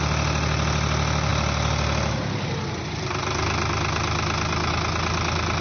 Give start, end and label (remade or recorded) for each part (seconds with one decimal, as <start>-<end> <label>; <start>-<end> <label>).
0.0-5.6 recorded

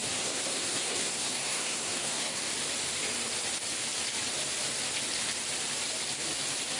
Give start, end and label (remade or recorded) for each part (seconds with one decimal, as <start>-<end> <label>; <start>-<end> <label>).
0.0-2.4 remade; 2.4-6.8 recorded

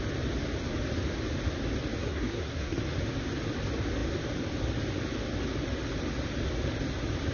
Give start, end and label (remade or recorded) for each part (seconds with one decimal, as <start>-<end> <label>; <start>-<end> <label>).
0.0-2.0 recorded; 2.0-2.8 remade; 2.8-7.3 recorded

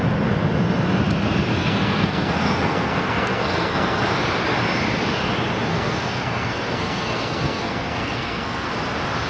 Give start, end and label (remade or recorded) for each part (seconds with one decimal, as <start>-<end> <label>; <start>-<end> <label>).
0.0-1.6 recorded; 1.6-4.0 remade; 4.0-5.7 recorded; 5.7-8.7 remade; 8.7-9.3 recorded

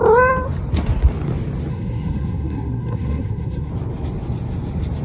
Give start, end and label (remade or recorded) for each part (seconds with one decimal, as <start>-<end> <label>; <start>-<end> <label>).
0.0-1.7 recorded; 1.7-3.7 remade; 3.7-5.0 recorded

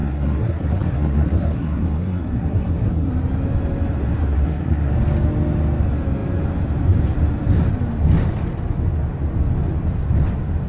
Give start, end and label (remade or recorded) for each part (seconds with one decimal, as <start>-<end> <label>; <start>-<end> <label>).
0.0-3.1 remade; 3.1-4.2 recorded; 4.2-4.9 remade; 4.9-10.7 recorded

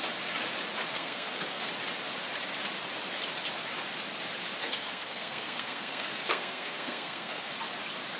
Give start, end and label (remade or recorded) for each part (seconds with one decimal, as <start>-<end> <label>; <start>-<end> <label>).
0.0-0.9 recorded; 0.9-1.7 remade; 1.7-4.6 recorded; 4.6-7.5 remade; 7.5-8.2 recorded